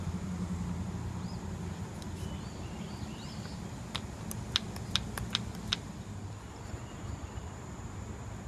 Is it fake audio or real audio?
real